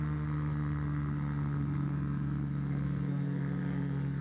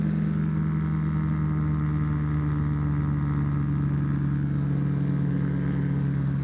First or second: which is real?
second